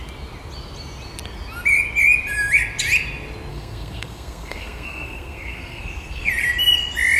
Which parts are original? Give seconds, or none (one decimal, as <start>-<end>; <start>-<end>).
0.0-3.5; 6.3-7.2